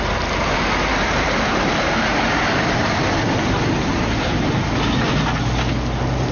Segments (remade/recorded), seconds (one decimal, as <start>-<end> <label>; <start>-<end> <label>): 0.0-0.9 recorded; 0.9-4.6 remade; 4.6-6.3 recorded